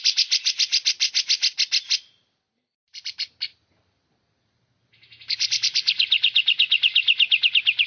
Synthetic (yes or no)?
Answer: no